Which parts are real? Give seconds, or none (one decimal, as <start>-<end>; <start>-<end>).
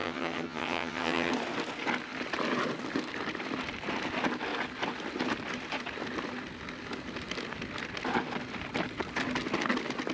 1.3-10.1